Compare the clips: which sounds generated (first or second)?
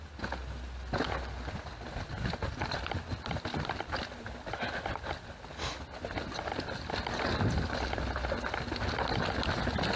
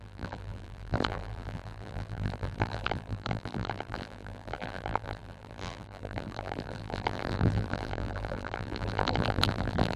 second